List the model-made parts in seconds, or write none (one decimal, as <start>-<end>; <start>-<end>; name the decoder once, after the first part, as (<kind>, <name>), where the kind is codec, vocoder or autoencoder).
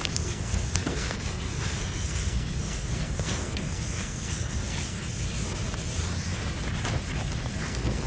0.0-5.0 (codec, SNAC); 7.5-8.1